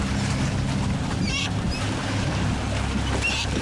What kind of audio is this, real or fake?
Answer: real